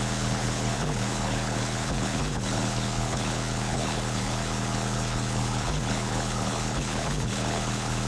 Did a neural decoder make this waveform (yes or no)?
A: yes